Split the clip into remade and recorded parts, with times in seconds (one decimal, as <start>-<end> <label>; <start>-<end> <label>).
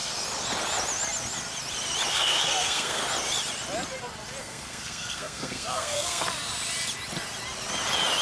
0.0-2.1 recorded; 2.1-3.0 remade; 3.0-4.4 recorded; 4.4-6.2 remade; 6.2-8.2 recorded